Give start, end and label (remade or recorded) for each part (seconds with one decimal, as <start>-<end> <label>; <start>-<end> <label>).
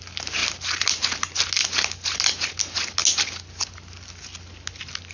0.0-5.1 recorded